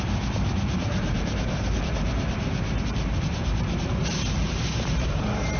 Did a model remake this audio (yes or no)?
yes